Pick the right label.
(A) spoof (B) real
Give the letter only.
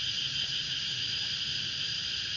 B